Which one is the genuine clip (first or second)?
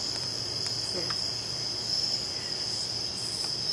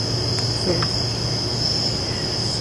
second